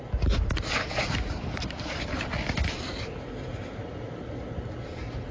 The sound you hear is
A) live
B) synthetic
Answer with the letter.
A